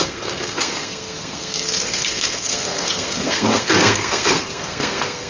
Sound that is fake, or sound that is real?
fake